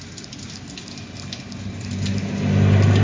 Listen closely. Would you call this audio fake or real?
real